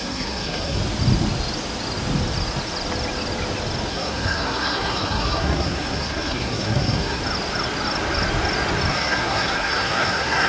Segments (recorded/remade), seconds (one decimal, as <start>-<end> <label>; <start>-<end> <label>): 0.0-0.8 remade; 0.8-3.9 recorded; 3.9-7.2 remade; 7.2-8.9 recorded; 8.9-10.5 remade